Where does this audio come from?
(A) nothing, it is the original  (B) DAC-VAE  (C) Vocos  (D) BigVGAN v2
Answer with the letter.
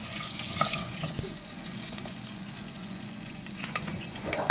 C